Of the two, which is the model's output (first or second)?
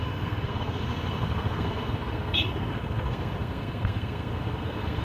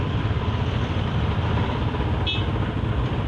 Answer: first